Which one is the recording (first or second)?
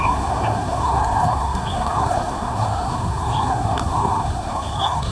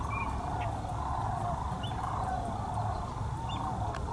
second